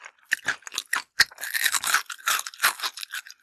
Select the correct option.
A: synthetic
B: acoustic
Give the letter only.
B